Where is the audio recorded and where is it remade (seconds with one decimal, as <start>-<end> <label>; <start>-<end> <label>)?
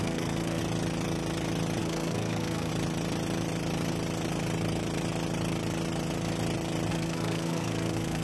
0.0-0.6 remade; 0.6-1.8 recorded; 1.8-2.7 remade; 2.7-6.9 recorded; 6.9-8.2 remade